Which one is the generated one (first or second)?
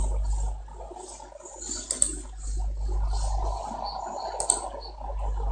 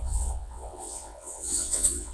second